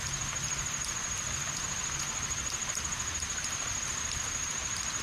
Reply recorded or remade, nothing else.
recorded